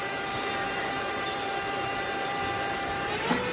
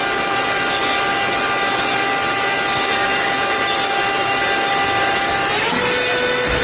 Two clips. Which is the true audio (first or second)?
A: second